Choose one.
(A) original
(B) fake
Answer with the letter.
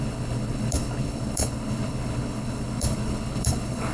B